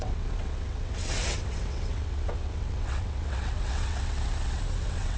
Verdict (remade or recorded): remade